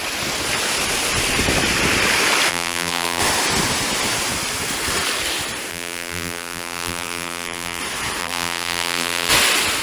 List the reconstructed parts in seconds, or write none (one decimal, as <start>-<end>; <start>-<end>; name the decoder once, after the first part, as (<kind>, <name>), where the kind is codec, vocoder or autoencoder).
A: 2.5-3.2 (vocoder, BigVGAN v2); 5.7-7.8; 8.2-9.3